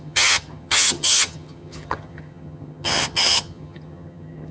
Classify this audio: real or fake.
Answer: fake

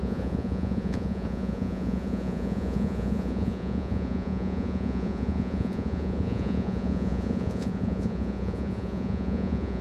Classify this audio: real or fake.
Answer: fake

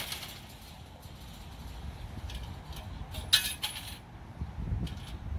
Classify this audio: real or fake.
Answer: real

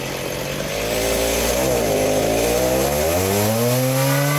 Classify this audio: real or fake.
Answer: real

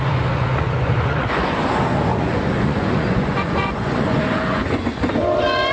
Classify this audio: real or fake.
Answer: fake